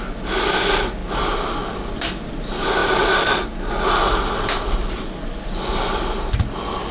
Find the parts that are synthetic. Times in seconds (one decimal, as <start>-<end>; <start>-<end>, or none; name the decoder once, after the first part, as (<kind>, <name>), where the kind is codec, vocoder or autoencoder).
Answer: none